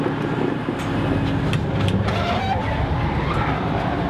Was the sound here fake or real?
real